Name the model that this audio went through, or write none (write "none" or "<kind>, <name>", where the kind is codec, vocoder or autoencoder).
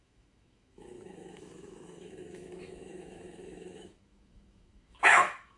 autoencoder, DAC-VAE